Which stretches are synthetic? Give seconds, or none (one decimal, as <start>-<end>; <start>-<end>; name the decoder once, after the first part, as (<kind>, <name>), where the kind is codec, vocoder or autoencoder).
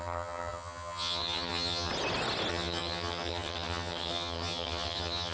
0.0-1.9 (vocoder, HiFi-GAN); 2.5-5.3